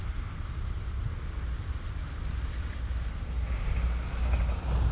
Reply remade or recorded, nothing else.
recorded